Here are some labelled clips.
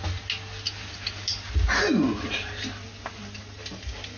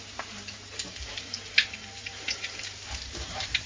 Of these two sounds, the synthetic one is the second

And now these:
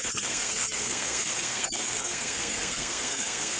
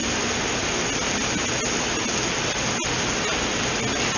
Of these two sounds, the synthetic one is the first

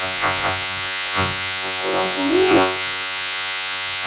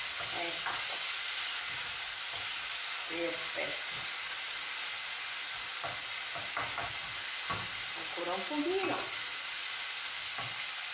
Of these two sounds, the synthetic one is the first